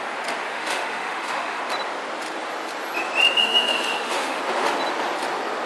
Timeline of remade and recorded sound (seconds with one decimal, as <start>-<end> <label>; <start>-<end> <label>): 0.0-0.5 recorded; 0.5-1.6 remade; 1.6-3.4 recorded; 3.4-4.4 remade; 4.4-5.7 recorded